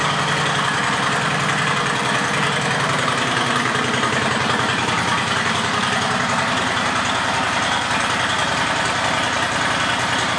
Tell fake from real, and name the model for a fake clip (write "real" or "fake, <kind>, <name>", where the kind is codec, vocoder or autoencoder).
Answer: real